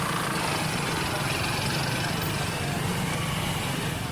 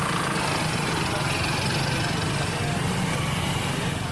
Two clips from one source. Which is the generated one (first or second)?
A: first